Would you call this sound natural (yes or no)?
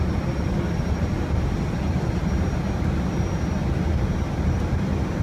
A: yes